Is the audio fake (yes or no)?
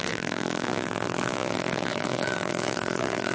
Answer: yes